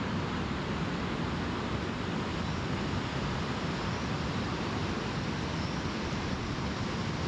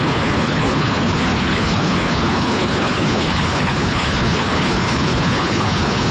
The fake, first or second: second